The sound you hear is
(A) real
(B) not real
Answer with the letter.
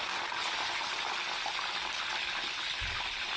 A